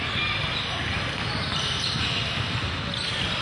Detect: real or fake real